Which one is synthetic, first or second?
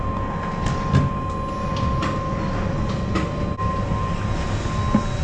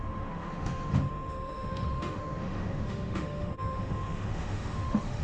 second